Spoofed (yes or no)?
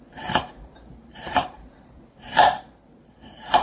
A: yes